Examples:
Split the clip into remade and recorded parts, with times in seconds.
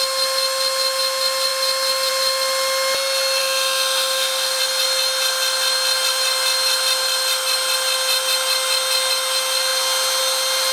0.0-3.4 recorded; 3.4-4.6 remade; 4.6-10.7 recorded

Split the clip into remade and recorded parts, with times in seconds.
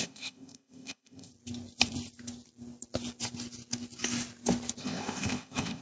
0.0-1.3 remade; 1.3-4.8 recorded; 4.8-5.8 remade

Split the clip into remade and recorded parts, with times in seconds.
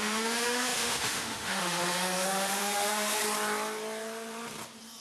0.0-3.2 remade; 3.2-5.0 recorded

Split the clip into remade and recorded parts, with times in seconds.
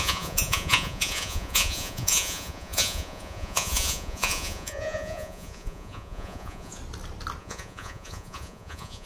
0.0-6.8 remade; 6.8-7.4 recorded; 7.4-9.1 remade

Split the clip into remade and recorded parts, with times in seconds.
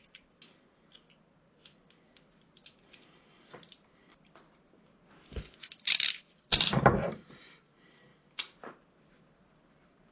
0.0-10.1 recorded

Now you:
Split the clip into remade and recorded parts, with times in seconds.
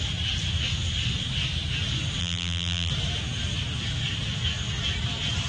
0.0-2.2 recorded; 2.2-2.9 remade; 2.9-5.5 recorded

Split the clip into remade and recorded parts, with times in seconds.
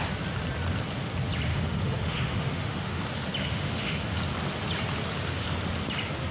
0.0-1.5 recorded; 1.5-3.0 remade; 3.0-3.4 recorded; 3.4-4.0 remade; 4.0-6.3 recorded